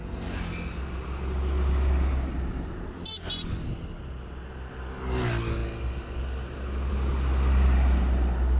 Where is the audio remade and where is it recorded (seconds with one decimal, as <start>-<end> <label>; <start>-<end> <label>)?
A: 0.0-8.6 recorded

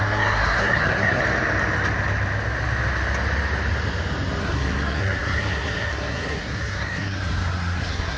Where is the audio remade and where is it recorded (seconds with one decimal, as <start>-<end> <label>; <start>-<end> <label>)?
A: 0.0-1.2 remade; 1.2-4.4 recorded; 4.4-8.2 remade

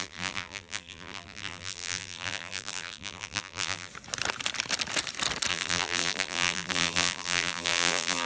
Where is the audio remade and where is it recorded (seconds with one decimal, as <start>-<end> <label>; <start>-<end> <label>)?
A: 0.0-3.9 remade; 3.9-5.5 recorded; 5.5-8.2 remade

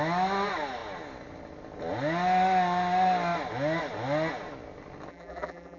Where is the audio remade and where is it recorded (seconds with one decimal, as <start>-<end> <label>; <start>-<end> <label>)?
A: 0.0-5.1 recorded; 5.1-5.8 remade